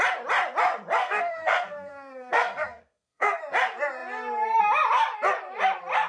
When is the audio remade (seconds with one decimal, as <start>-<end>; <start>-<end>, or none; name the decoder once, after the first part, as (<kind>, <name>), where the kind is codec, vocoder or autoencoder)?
1.0-3.4 (codec, SNAC)